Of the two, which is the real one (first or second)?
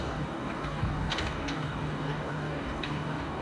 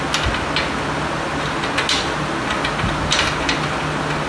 second